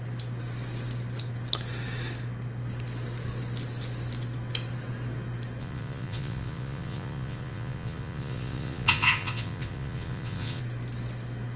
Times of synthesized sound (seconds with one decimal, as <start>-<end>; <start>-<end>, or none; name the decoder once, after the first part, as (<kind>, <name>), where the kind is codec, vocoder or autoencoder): 5.6-10.6 (vocoder, Vocos)